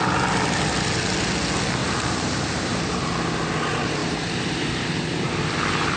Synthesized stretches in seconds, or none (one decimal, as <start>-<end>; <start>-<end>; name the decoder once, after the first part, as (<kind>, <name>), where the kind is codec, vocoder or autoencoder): 1.8-3.5 (vocoder, BigVGAN v2); 4.0-5.3